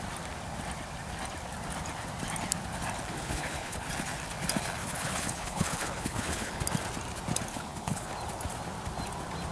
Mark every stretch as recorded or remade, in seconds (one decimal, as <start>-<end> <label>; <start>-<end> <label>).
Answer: 0.0-3.2 recorded; 3.2-3.9 remade; 3.9-4.8 recorded; 4.8-6.6 remade; 6.6-7.5 recorded; 7.5-8.1 remade; 8.1-9.5 recorded